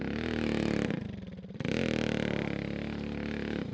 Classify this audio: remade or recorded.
recorded